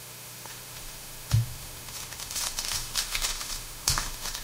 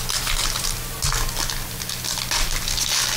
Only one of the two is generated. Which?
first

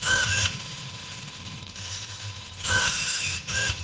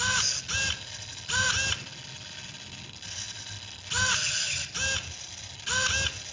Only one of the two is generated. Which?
first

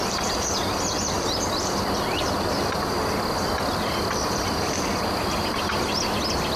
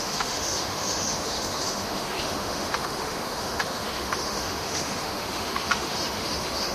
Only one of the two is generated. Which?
second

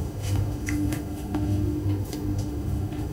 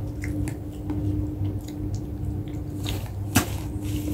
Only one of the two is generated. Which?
first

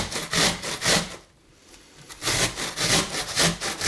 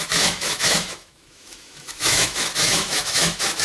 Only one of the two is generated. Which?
second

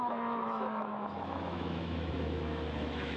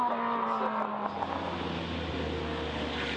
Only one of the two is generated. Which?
first